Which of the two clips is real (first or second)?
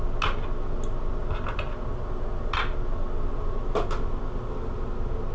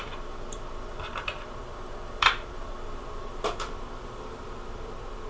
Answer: first